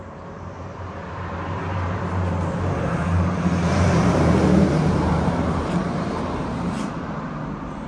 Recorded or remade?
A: remade